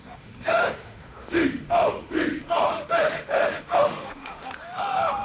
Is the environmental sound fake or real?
fake